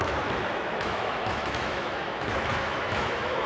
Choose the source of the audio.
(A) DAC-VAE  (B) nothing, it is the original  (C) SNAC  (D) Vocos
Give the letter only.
A